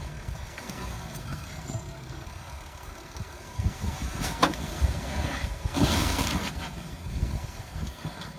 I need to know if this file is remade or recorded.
remade